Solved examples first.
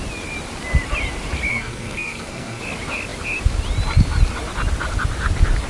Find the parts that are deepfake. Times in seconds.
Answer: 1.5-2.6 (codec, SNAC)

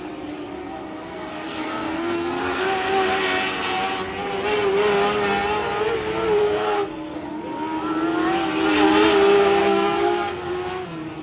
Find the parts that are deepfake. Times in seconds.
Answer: 0.6-2.6 (codec, SNAC); 6.4-7.4; 9.6-10.5

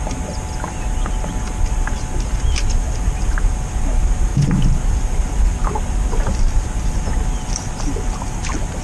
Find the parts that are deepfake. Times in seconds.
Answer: none

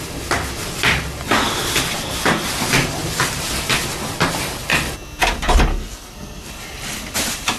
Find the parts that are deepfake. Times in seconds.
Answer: 5.7-6.5 (codec, SNAC)

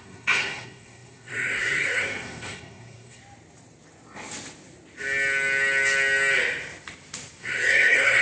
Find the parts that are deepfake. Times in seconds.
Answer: 0.0-3.2 (codec, SNAC); 7.4-8.2

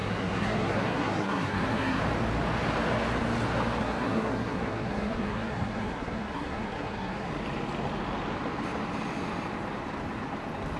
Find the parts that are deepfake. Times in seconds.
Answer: 0.0-2.0 (codec, SNAC); 3.8-7.3

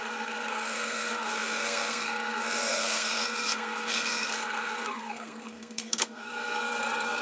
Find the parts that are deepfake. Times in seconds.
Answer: 0.0-7.2 (codec, SNAC)

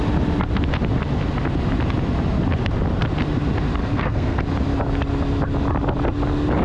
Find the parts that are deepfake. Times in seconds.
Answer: 3.8-4.4 (codec, SNAC)